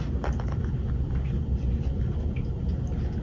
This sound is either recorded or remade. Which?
recorded